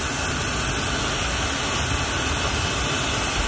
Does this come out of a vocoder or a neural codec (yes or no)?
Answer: no